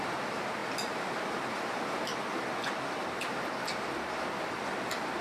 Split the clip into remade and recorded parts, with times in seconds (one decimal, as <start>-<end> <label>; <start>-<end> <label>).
0.0-2.1 remade; 2.1-4.4 recorded; 4.4-5.2 remade